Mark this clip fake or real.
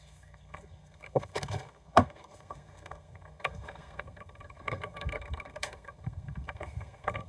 fake